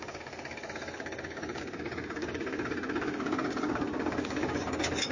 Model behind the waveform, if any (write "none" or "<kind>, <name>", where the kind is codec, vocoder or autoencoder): codec, DAC